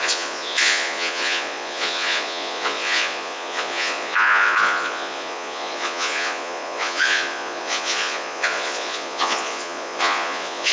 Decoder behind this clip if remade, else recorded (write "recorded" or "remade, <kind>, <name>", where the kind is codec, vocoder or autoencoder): remade, vocoder, Vocos